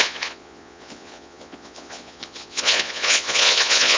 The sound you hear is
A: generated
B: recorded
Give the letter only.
A